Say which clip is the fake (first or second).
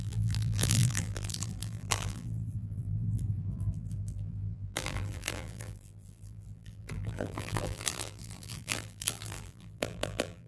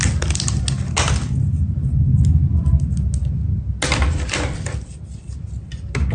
first